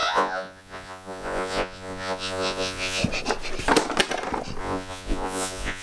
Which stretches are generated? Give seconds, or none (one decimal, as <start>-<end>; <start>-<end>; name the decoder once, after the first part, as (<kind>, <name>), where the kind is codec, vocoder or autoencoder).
0.0-3.0 (vocoder, Vocos); 4.6-5.8